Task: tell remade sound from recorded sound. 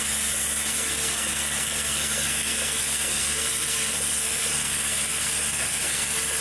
remade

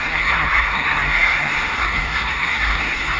remade